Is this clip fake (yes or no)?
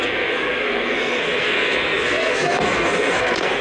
yes